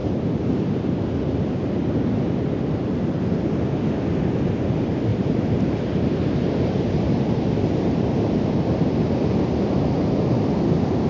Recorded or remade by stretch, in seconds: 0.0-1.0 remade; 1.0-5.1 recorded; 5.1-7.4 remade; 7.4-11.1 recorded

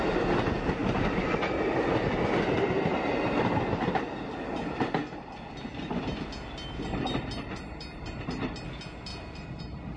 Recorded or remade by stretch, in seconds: 0.0-0.8 recorded; 0.8-1.8 remade; 1.8-9.1 recorded; 9.1-9.6 remade; 9.6-10.0 recorded

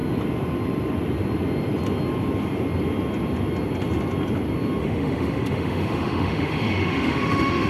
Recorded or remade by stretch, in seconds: 0.0-4.8 recorded; 4.8-7.7 remade

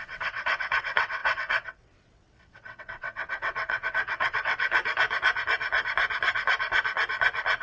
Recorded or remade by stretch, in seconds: 0.0-4.6 remade; 4.6-7.6 recorded